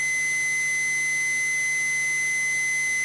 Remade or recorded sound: recorded